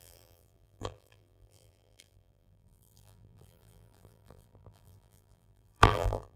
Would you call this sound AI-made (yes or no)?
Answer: yes